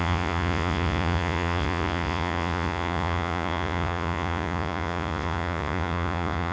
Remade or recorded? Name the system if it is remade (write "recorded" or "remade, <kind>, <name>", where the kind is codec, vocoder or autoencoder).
remade, vocoder, Vocos